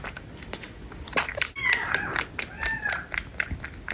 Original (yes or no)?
yes